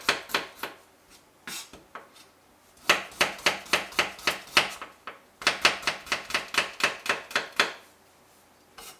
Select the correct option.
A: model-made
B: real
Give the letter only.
B